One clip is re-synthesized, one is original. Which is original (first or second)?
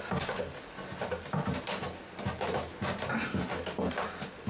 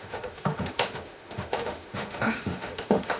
first